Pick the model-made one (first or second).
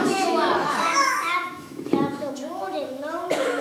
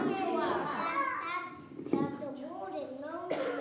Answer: first